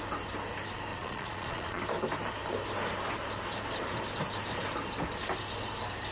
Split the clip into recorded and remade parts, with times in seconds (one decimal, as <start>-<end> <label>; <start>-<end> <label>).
0.0-0.9 recorded; 0.9-1.8 remade; 1.8-6.1 recorded